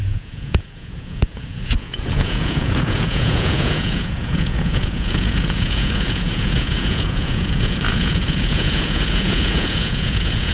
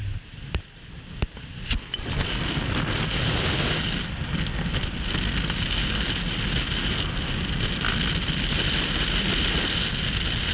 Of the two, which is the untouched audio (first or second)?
second